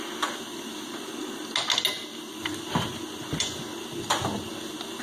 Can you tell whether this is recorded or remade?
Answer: recorded